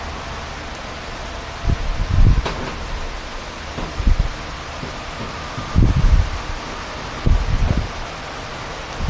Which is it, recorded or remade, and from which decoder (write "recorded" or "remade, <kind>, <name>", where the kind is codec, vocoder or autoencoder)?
recorded